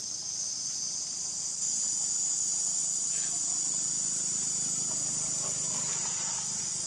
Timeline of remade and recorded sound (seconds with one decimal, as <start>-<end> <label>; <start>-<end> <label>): 0.0-6.9 recorded